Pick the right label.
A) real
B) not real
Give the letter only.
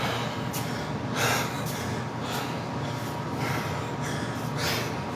A